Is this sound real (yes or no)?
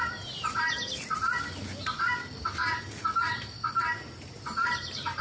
yes